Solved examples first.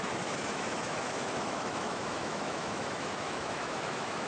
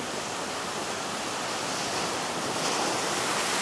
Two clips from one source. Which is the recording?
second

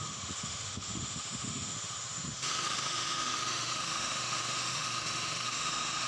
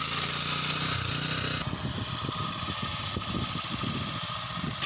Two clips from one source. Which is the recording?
second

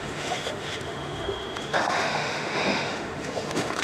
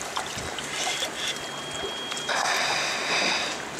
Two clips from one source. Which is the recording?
second